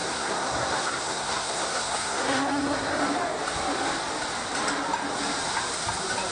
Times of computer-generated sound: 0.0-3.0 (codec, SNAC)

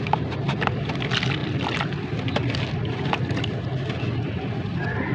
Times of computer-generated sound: none

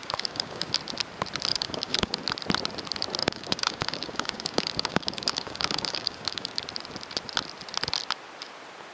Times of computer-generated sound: 0.0-0.7 (codec, DAC); 1.5-2.2; 3.2-6.6

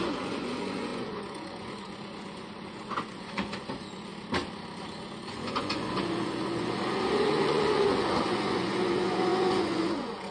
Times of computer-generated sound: 0.0-4.1 (vocoder, Vocos); 5.0-10.3

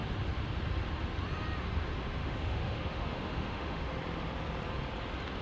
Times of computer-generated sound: 2.2-3.9 (autoencoder, DAC-VAE)

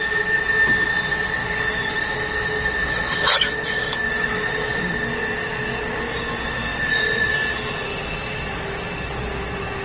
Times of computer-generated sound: 1.4-5.0 (autoencoder, DAC-VAE)

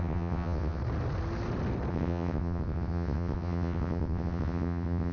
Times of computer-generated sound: 0.0-0.8 (vocoder, WaveNeXt); 1.9-5.1

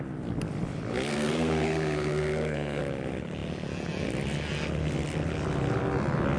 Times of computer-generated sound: 1.1-2.8 (codec, SNAC)